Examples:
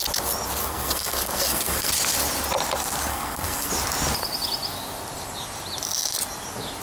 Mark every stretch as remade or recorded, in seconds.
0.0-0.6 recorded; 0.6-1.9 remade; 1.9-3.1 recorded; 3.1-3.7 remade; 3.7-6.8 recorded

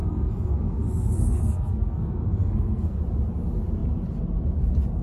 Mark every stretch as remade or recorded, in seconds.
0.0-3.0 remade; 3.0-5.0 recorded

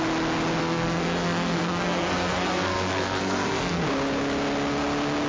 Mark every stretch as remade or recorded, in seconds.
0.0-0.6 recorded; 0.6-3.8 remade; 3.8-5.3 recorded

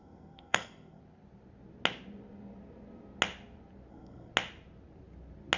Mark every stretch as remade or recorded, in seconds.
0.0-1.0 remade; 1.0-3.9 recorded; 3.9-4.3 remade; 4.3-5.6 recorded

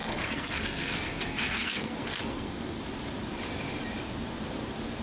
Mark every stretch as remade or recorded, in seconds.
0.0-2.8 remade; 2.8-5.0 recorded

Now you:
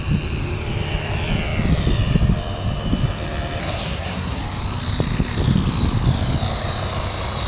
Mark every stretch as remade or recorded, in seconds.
0.0-3.6 recorded; 3.6-4.4 remade; 4.4-7.5 recorded